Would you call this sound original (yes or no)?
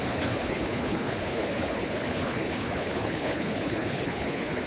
no